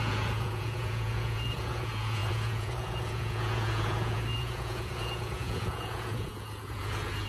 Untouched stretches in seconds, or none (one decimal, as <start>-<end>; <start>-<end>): none